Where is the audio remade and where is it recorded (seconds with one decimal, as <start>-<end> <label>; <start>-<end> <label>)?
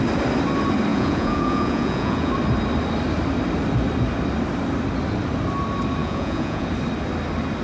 0.0-0.9 recorded; 0.9-2.3 remade; 2.3-6.0 recorded; 6.0-6.7 remade; 6.7-7.6 recorded